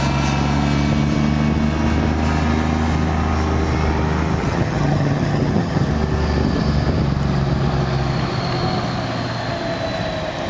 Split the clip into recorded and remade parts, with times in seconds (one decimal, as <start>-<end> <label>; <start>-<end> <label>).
0.0-4.4 recorded; 4.4-5.9 remade; 5.9-10.5 recorded